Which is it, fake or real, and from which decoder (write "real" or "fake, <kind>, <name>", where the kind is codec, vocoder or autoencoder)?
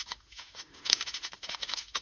fake, autoencoder, DAC-VAE